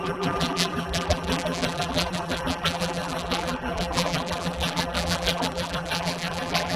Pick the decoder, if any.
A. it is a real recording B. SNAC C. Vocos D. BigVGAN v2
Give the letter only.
D